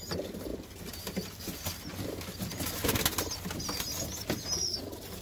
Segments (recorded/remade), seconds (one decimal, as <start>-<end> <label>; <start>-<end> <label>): 0.0-3.1 recorded; 3.1-4.1 remade; 4.1-5.2 recorded